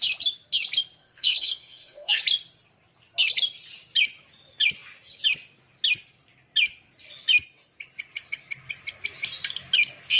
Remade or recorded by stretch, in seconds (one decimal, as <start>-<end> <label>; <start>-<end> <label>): 0.0-1.0 recorded; 1.0-2.2 remade; 2.2-10.2 recorded